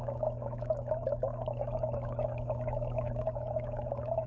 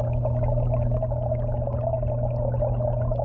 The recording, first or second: second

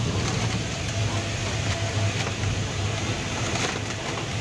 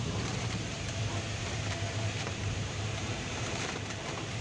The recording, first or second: first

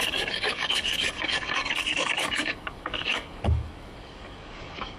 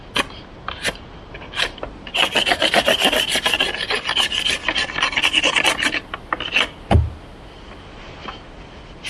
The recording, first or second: second